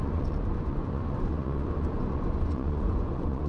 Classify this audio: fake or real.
fake